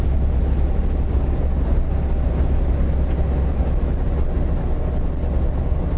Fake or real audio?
real